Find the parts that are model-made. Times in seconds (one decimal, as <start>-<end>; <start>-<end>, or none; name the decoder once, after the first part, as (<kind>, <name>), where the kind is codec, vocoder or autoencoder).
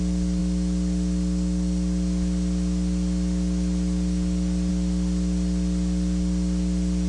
none